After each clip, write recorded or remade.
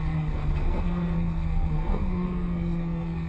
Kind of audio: remade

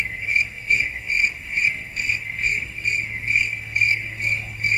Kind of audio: remade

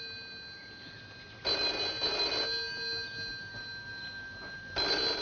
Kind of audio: recorded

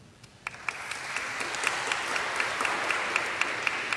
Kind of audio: recorded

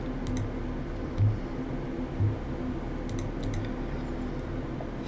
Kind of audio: recorded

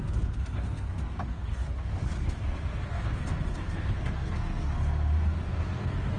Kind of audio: remade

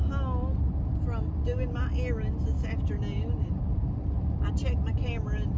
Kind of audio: recorded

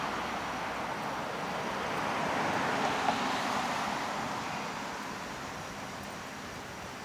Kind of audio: recorded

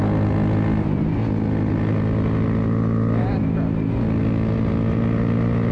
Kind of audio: recorded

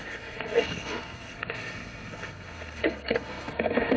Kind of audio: remade